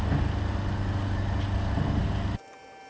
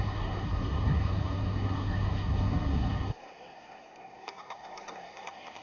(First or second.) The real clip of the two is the first